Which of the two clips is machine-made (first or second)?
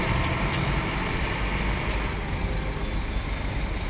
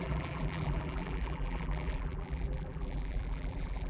second